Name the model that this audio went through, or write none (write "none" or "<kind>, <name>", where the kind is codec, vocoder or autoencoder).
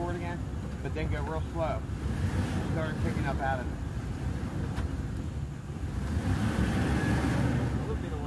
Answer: none